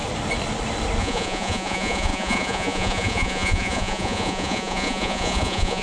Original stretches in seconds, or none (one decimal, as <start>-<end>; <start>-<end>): 0.0-1.0